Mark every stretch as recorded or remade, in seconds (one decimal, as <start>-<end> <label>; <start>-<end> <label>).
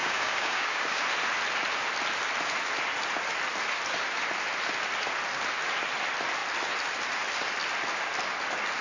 0.0-1.0 remade; 1.0-8.8 recorded